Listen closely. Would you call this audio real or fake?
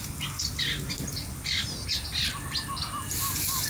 real